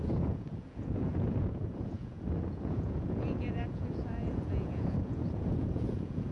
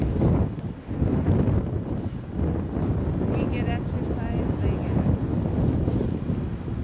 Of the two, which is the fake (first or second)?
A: first